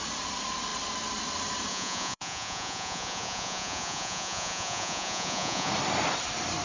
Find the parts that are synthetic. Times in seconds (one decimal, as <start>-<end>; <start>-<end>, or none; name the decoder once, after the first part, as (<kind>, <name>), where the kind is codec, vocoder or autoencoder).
1.7-5.7 (vocoder, Vocos)